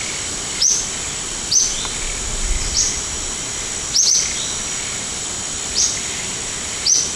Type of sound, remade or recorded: recorded